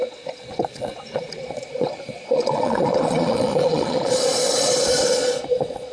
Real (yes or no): no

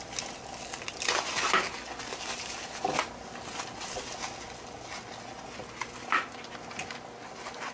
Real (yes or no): yes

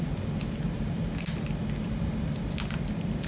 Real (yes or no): yes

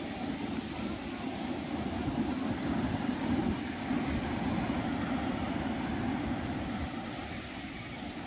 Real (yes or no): yes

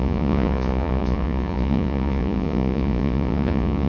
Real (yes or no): no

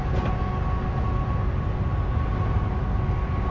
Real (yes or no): yes